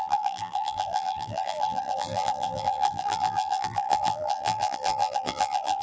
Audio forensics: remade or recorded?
remade